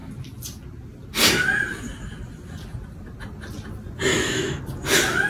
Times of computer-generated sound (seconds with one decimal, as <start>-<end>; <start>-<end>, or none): 4.1-4.6